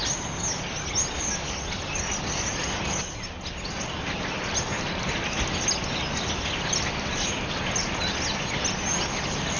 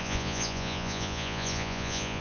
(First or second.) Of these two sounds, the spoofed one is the second